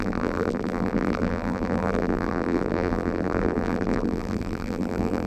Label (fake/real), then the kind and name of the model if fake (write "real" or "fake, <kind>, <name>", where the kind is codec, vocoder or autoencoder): fake, vocoder, BigVGAN v2